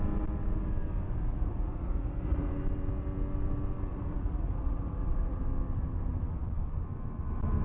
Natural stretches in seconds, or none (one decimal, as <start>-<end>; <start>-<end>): 0.0-1.3; 2.5-3.9; 5.4-7.6